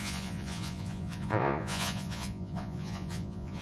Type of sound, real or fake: fake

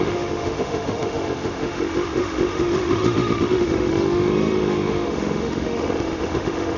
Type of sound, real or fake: fake